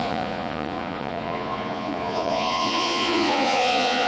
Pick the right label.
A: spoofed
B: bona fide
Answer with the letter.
A